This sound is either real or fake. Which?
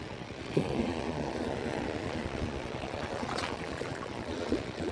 fake